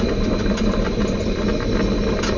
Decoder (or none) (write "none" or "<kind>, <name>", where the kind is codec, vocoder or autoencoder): none